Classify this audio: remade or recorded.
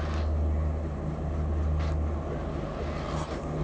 recorded